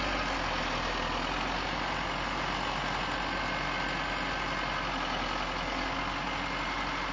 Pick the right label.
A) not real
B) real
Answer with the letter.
B